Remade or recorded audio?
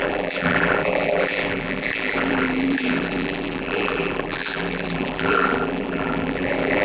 remade